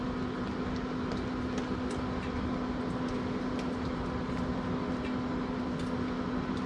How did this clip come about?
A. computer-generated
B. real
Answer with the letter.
B